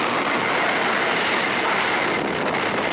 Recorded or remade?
recorded